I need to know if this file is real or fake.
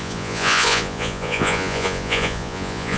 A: fake